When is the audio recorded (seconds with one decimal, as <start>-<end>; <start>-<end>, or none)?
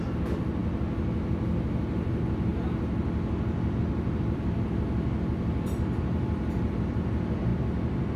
0.6-1.9; 2.5-3.9